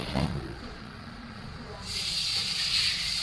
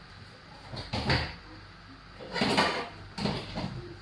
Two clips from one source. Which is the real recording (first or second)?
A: second